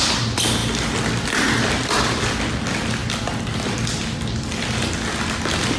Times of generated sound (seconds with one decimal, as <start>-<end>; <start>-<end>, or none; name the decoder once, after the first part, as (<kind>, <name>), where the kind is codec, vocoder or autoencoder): none